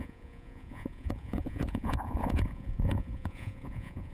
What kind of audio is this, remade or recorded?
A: remade